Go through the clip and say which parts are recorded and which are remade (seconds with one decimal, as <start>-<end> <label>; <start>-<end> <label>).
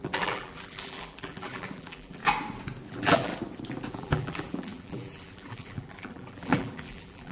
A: 0.0-2.2 remade; 2.2-2.9 recorded; 2.9-3.3 remade; 3.3-3.9 recorded; 3.9-7.3 remade